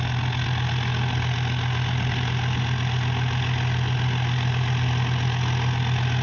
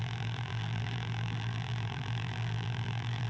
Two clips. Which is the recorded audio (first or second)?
first